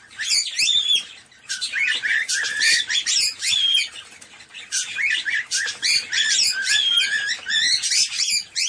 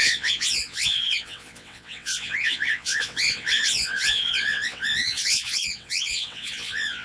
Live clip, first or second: first